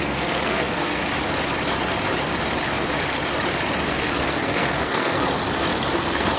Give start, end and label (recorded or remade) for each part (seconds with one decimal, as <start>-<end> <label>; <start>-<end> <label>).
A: 0.0-1.0 remade; 1.0-3.8 recorded; 3.8-5.2 remade; 5.2-6.0 recorded; 6.0-6.4 remade